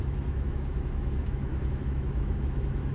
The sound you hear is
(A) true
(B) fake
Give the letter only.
B